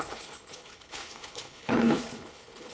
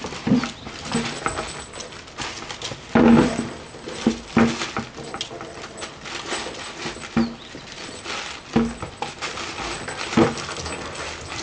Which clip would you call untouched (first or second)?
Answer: second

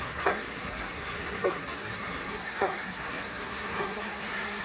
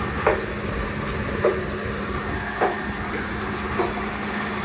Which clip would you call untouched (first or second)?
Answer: second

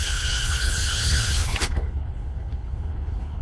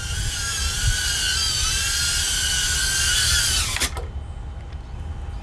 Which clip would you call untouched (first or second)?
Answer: second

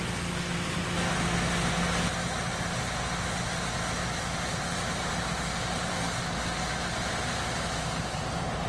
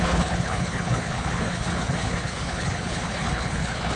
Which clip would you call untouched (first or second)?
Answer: first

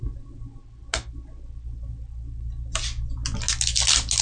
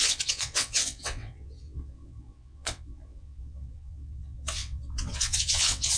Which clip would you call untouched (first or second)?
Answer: first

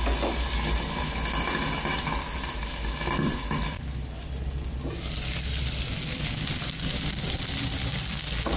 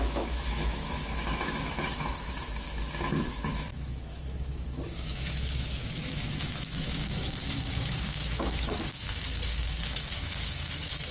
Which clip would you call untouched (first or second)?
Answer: first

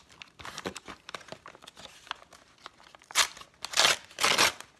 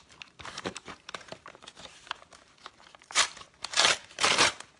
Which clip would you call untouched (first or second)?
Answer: first